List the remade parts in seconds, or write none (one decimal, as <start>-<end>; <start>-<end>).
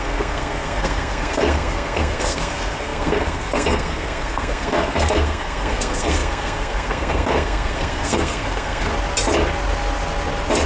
0.0-8.9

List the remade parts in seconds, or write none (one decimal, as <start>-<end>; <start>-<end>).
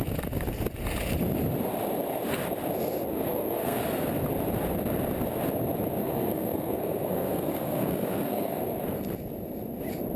3.1-3.8; 6.0-8.6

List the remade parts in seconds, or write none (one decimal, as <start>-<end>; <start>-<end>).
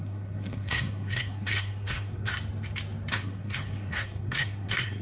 0.0-2.3; 3.1-5.0